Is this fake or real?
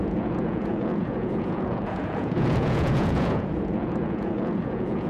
fake